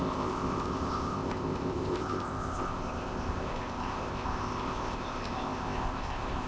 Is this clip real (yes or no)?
no